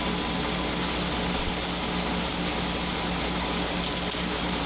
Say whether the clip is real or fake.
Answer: fake